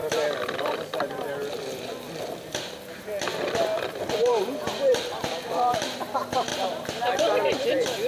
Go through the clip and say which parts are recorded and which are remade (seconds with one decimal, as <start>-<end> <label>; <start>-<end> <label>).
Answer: 0.0-1.6 remade; 1.6-4.3 recorded; 4.3-6.0 remade; 6.0-6.5 recorded; 6.5-8.1 remade